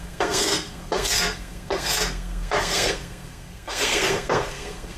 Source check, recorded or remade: remade